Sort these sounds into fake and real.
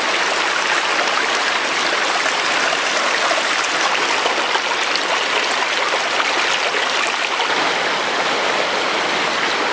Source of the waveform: real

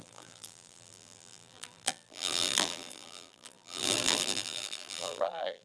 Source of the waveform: fake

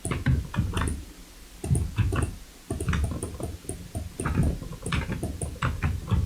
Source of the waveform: real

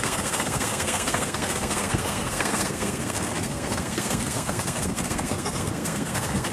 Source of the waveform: fake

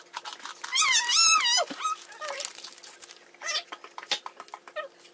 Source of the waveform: real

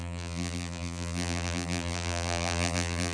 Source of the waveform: fake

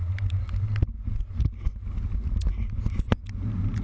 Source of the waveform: real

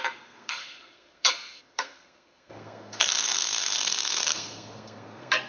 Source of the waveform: fake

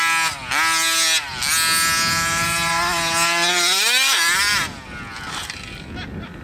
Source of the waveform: real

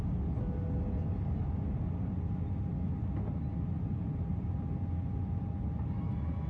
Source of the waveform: real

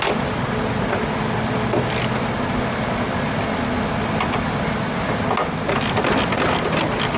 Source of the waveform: real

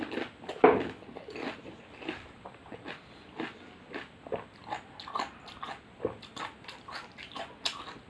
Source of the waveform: real